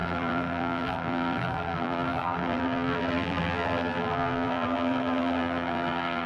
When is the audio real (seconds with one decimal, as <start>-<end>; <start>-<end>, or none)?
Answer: none